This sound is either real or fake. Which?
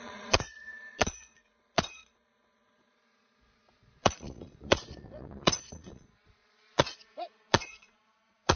fake